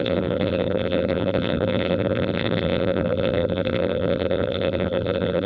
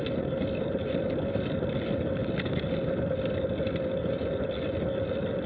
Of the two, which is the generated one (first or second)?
first